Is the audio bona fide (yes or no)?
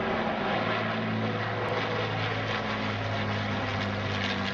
yes